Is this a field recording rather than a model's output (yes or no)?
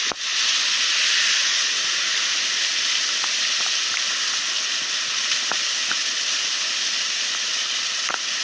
yes